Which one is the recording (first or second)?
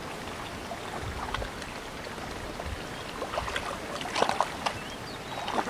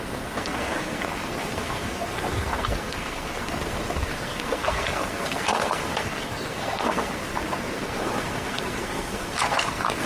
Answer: first